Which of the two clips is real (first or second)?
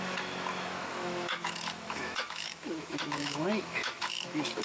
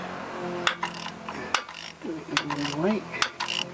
second